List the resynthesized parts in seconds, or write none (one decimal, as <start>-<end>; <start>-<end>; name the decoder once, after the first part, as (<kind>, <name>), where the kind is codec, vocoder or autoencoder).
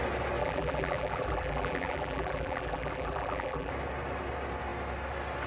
0.4-3.7 (vocoder, BigVGAN v2)